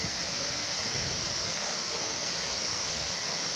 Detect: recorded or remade remade